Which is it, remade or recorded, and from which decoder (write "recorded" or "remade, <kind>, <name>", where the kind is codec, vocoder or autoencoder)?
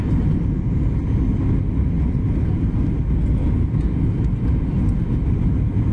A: recorded